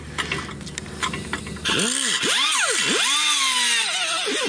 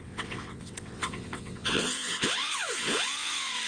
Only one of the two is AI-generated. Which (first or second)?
second